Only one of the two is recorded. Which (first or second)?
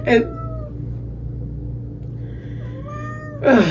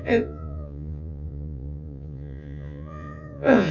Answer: first